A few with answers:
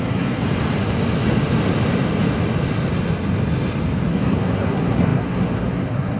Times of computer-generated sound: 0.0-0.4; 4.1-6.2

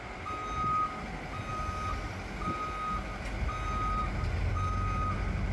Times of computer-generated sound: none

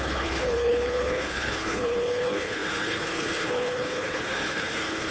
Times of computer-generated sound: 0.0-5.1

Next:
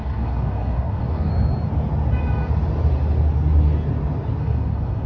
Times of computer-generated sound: 0.0-1.3; 4.4-5.1

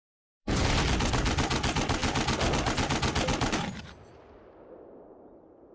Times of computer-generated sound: 0.0-0.8

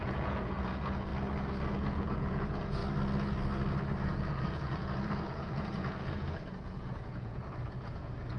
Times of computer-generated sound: 0.0-1.1; 1.7-2.8; 4.0-8.4

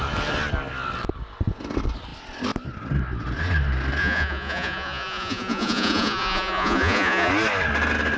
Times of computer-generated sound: 4.0-7.3

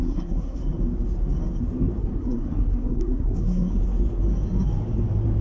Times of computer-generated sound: 0.0-0.6; 2.0-3.7